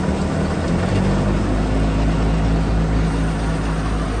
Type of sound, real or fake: real